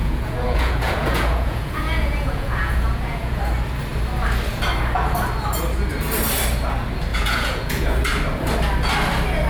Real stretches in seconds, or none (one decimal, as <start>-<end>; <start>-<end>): 3.4-7.1; 8.0-9.5